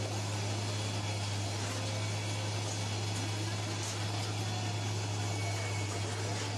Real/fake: real